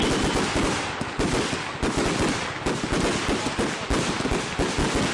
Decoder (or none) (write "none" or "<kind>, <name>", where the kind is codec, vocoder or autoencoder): none